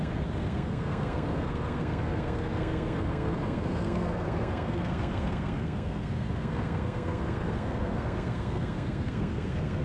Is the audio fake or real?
fake